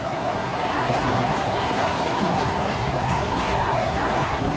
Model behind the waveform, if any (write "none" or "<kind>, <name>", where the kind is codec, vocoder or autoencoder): codec, SNAC